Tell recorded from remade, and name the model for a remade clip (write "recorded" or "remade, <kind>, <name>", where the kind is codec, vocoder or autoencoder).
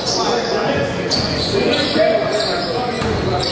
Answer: remade, vocoder, Vocos